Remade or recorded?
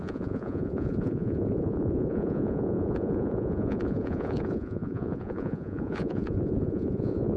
remade